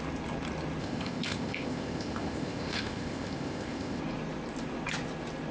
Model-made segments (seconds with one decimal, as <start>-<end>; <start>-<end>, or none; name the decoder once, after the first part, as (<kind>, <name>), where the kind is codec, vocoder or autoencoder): 0.8-4.0 (codec, ZipCodec)